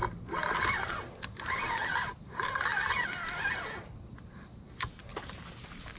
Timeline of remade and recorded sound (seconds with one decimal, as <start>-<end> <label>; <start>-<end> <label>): 0.0-5.1 recorded; 5.1-5.6 remade; 5.6-6.0 recorded